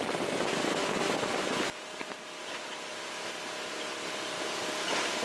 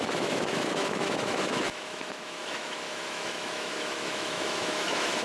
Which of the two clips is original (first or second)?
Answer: first